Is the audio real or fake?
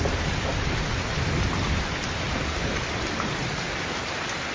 real